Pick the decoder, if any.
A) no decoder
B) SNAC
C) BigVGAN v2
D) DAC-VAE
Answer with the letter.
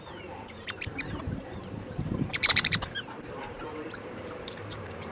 C